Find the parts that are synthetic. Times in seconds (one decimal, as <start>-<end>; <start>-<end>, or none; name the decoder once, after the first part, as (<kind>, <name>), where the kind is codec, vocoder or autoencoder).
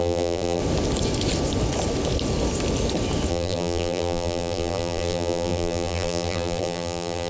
0.0-0.6 (vocoder, BigVGAN v2); 3.3-7.3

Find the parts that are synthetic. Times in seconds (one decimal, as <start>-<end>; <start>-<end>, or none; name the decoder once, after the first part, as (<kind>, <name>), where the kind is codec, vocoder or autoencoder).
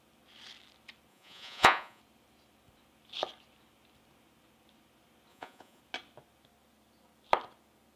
1.1-2.0 (vocoder, Vocos); 5.3-5.8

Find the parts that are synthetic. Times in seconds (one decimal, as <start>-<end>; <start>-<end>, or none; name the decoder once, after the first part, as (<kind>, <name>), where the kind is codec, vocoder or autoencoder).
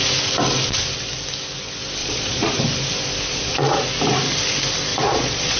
2.0-2.5 (vocoder, Vocos); 3.3-3.8; 4.9-5.6